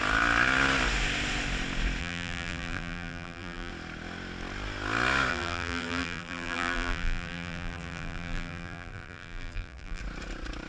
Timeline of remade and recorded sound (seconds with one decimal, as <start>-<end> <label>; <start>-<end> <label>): 0.0-2.0 recorded; 2.0-3.7 remade; 3.7-5.3 recorded; 5.3-10.0 remade; 10.0-10.7 recorded